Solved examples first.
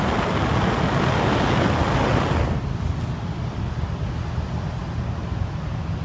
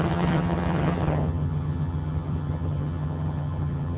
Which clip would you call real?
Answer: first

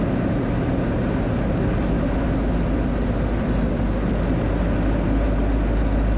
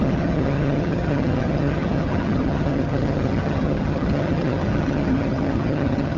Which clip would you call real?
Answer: first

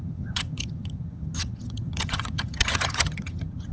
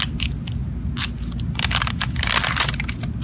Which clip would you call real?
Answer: second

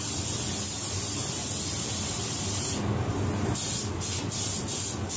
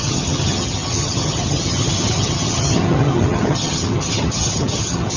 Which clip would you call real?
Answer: first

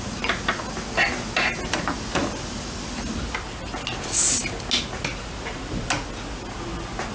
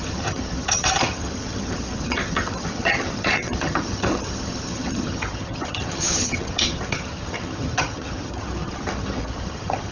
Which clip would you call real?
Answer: first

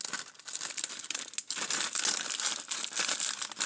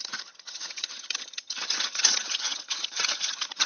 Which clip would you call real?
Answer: first